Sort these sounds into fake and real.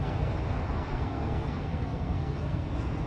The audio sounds fake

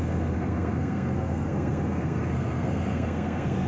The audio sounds fake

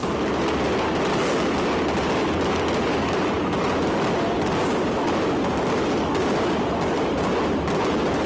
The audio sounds real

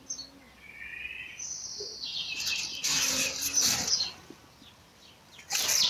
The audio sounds real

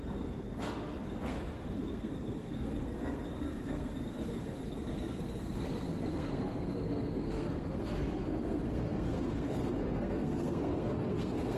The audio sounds fake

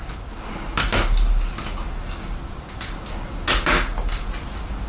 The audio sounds real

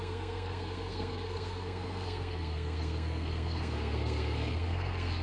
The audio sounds fake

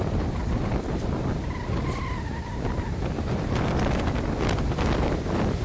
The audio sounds real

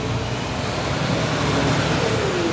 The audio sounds real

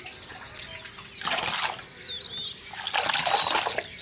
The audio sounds real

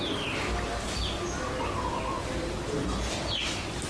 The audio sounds real